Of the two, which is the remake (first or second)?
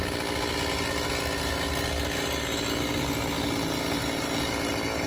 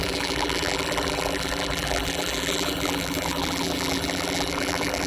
second